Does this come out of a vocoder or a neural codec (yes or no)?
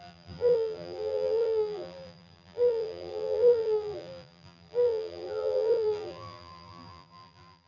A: yes